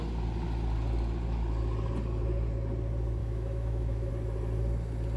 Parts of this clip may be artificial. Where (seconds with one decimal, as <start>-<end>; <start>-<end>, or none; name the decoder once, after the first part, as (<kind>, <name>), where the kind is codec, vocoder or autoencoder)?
3.2-4.1 (autoencoder, DAC-VAE)